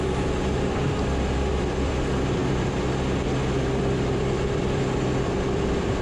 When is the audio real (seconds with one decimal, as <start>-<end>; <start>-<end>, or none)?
2.4-3.8